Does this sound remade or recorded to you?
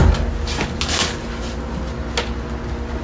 recorded